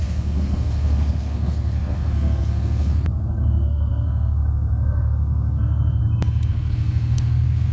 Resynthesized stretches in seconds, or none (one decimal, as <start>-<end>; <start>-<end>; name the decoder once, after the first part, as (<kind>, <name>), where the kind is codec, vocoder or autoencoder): 0.0-6.0 (codec, SNAC); 6.5-7.7

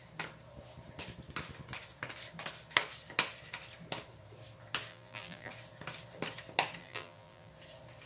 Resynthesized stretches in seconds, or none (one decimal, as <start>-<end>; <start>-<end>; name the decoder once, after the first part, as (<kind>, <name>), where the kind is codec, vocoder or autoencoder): 4.9-5.5 (vocoder, BigVGAN v2); 6.8-7.5

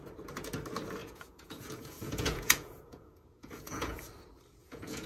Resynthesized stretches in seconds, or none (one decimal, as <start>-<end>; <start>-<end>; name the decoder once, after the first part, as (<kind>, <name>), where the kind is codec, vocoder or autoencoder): 1.0-4.1 (vocoder, Vocos); 4.6-5.1

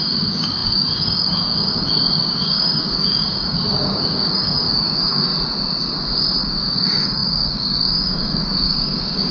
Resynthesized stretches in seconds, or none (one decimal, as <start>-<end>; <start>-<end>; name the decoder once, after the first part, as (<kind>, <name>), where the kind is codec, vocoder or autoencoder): 0.0-5.3 (codec, DAC); 6.4-9.3

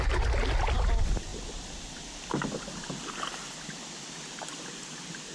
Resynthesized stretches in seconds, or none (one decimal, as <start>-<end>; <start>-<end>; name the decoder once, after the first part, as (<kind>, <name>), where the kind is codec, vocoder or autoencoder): none

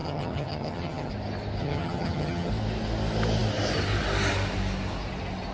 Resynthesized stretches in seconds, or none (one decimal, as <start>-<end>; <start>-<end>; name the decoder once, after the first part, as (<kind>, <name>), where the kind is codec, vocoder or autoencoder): 0.0-1.1 (vocoder, HiFi-GAN); 1.6-2.5